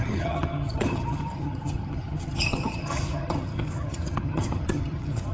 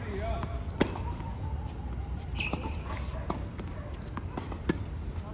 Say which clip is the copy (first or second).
first